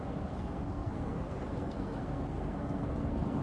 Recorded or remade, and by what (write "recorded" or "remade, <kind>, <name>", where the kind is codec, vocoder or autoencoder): remade, codec, SNAC